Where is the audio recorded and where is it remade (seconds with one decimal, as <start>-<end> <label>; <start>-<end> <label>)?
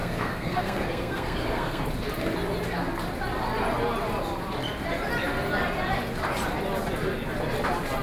0.0-1.8 remade; 1.8-8.0 recorded